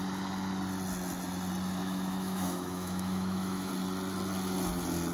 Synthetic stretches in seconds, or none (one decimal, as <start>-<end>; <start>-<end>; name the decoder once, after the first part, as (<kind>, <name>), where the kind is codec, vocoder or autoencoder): 1.8-3.7 (autoencoder, DAC-VAE)